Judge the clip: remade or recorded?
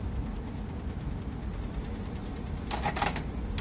recorded